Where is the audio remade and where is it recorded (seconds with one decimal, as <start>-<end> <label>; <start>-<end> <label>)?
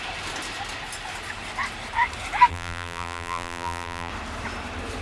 0.0-2.5 recorded; 2.5-4.1 remade; 4.1-5.0 recorded